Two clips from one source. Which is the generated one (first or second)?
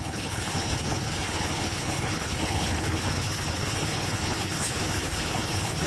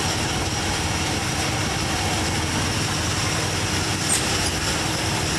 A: first